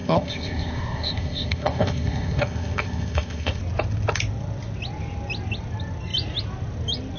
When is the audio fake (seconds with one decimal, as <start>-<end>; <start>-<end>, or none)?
0.0-3.6